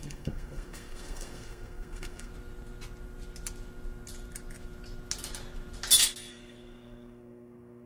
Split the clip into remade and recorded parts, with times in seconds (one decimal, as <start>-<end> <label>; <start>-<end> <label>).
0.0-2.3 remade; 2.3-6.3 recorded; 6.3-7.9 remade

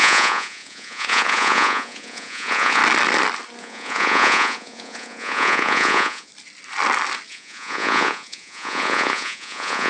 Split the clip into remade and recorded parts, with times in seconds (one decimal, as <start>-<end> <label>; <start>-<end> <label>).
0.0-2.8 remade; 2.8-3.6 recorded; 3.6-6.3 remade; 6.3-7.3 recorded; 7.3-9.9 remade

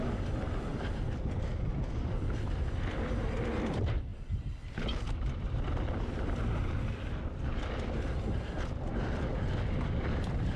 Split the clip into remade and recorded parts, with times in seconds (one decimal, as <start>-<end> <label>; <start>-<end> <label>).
0.0-10.6 recorded